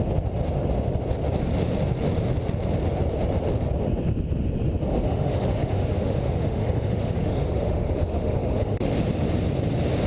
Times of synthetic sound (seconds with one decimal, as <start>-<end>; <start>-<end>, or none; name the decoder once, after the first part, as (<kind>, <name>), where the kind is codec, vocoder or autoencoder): 5.0-8.9 (autoencoder, DAC-VAE)